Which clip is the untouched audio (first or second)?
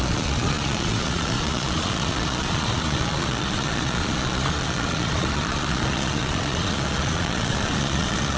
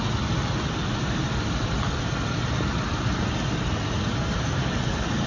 second